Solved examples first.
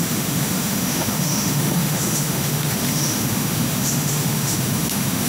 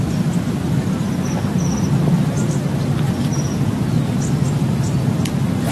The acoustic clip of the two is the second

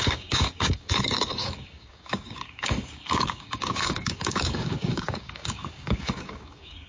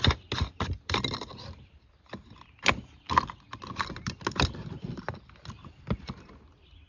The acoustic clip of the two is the second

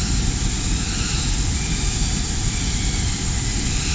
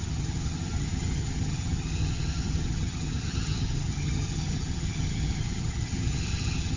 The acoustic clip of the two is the first